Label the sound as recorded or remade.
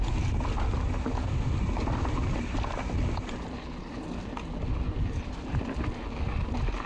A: recorded